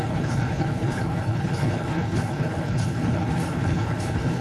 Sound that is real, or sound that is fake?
fake